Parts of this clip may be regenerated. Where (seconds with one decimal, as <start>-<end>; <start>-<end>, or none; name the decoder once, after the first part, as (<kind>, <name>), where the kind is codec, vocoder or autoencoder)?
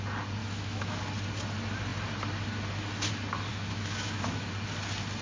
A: 0.4-1.0 (autoencoder, DAC-VAE); 3.5-4.5